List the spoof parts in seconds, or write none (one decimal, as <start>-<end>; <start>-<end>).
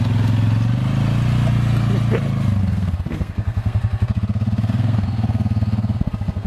2.6-6.5